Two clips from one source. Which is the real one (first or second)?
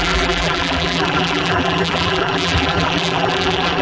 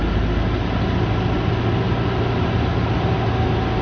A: second